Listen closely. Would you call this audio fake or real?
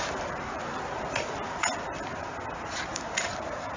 fake